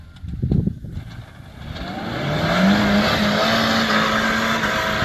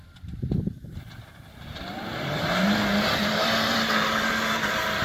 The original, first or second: first